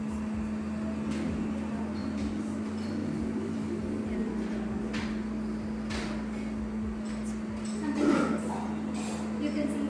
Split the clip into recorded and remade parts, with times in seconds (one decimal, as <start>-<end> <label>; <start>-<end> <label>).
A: 0.0-2.0 recorded; 2.0-2.6 remade; 2.6-3.0 recorded; 3.0-3.7 remade; 3.7-9.9 recorded